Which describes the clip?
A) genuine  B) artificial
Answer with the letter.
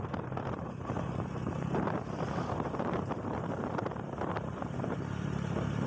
B